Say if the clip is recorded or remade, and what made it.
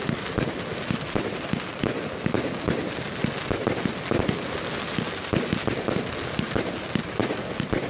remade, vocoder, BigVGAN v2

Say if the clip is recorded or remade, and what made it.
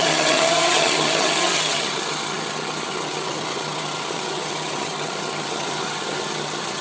remade, vocoder, HiFi-GAN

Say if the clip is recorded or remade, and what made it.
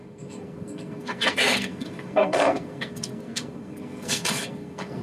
remade, codec, SNAC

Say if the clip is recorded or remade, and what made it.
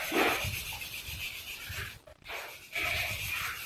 recorded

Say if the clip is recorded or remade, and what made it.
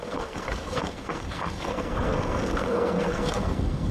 remade, codec, SNAC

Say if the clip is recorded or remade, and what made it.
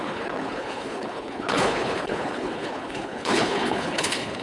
remade, codec, HILCodec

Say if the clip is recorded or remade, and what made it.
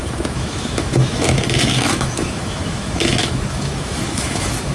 remade, autoencoder, DAC-VAE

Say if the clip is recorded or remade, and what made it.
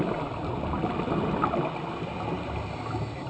recorded